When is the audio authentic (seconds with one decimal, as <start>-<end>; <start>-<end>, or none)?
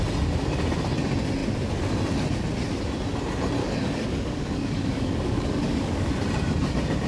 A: 0.0-3.6; 6.1-7.1